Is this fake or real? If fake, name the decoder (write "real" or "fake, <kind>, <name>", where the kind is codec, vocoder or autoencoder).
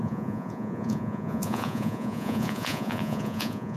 fake, vocoder, Vocos